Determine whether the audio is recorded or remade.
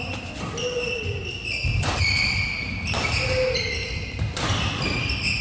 recorded